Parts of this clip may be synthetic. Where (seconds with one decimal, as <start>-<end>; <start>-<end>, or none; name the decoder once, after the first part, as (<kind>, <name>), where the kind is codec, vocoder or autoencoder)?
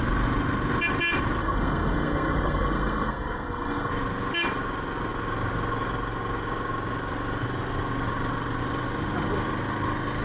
1.4-3.9 (codec, SNAC)